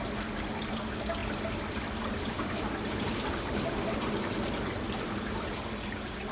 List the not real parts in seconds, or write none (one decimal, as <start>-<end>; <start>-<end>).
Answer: none